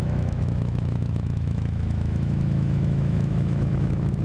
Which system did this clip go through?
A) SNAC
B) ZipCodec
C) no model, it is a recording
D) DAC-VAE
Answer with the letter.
D